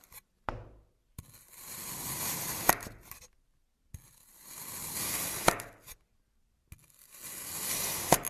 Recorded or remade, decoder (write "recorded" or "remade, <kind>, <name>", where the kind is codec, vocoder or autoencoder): recorded